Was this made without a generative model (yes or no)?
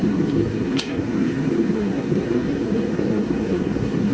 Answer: no